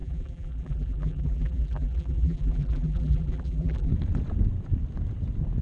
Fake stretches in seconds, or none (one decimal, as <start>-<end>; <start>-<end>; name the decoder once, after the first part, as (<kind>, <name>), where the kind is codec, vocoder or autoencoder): 0.0-3.9 (vocoder, BigVGAN v2)